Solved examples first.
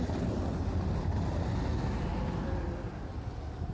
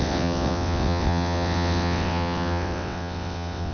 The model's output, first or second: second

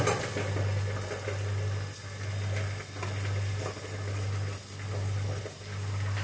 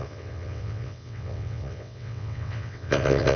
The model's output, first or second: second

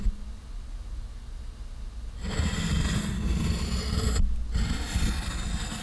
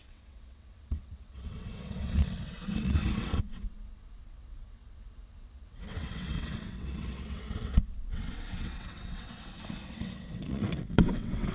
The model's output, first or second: second